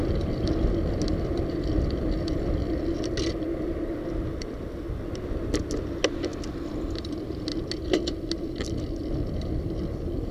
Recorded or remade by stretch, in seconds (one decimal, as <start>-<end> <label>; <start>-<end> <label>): 0.0-10.3 recorded